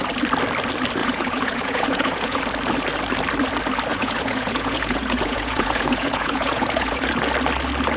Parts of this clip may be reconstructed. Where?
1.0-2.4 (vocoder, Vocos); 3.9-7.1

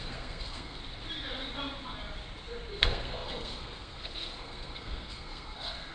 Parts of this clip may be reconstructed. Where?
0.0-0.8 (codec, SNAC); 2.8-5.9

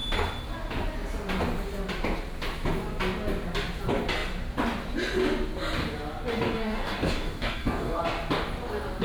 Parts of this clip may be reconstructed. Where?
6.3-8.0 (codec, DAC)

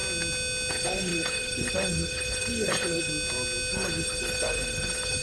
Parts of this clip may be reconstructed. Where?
0.7-3.1 (codec, HILCodec); 3.7-5.2

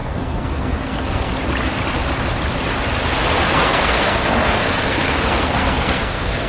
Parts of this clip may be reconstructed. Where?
0.0-1.3 (codec, SNAC); 3.5-6.5

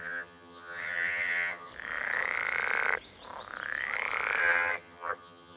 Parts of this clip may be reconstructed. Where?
0.0-1.7 (vocoder, HiFi-GAN); 4.4-5.6

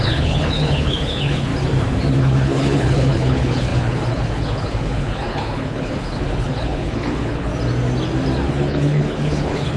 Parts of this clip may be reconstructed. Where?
0.0-1.5 (codec, HILCodec); 2.2-7.5; 8.5-9.8